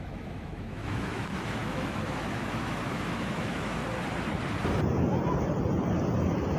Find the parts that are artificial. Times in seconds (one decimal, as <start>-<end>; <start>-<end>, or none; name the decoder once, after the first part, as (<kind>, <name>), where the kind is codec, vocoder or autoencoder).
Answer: 0.0-3.8 (autoencoder, DAC-VAE)